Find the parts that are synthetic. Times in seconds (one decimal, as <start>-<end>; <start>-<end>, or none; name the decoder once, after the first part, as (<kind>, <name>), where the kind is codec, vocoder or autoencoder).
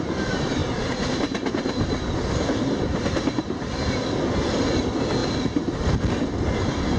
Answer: 0.6-4.1 (vocoder, BigVGAN v2)